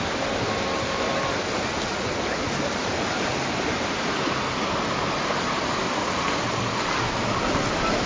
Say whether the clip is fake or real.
real